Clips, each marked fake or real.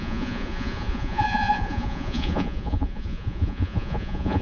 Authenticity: fake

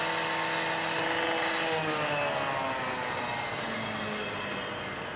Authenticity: real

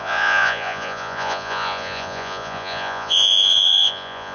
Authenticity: fake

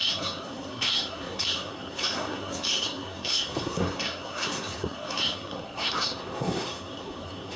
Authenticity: fake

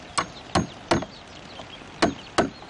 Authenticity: real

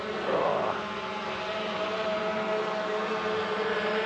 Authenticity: real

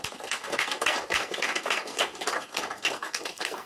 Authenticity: fake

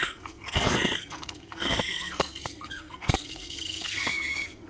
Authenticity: fake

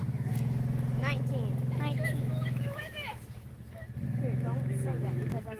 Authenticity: fake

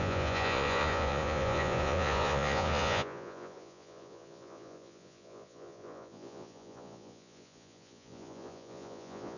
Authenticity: fake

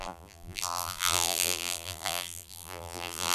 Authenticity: fake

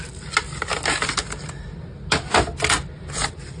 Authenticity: real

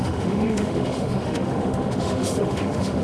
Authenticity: fake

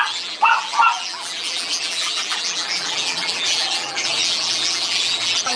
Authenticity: fake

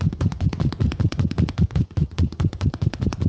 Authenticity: fake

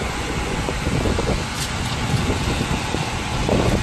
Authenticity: fake